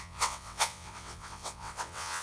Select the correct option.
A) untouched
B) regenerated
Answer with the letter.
B